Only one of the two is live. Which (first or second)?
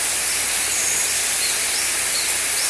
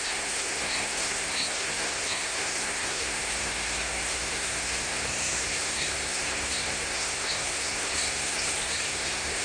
first